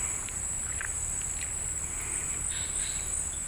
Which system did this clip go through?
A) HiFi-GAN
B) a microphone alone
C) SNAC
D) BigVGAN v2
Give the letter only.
B